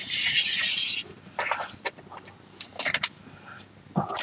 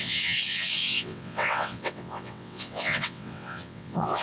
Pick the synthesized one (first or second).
second